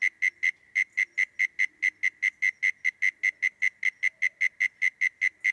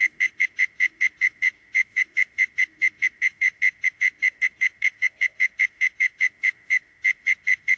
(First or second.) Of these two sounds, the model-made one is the second